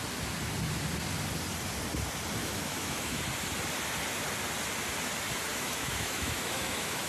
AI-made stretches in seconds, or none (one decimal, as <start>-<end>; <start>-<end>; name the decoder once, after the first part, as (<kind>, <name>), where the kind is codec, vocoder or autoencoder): 2.4-3.2 (autoencoder, DAC-VAE); 5.5-7.1